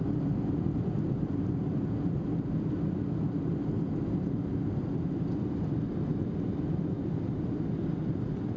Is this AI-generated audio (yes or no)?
no